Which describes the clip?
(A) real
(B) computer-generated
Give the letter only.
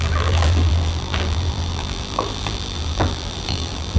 B